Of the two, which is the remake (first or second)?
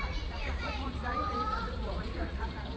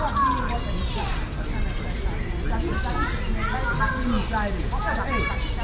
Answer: first